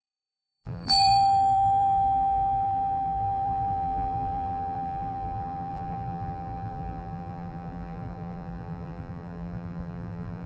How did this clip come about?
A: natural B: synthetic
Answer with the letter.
B